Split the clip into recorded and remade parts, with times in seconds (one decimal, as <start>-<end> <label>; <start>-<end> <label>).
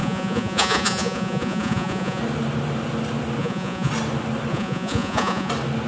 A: 0.0-2.2 remade; 2.2-3.4 recorded; 3.4-3.9 remade; 3.9-4.5 recorded; 4.5-5.5 remade; 5.5-5.9 recorded